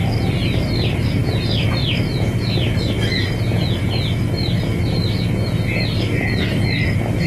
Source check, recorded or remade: recorded